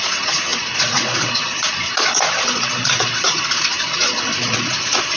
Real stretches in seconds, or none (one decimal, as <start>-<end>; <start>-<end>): none